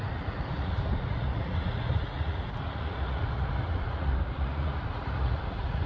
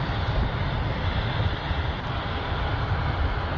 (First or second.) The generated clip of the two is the first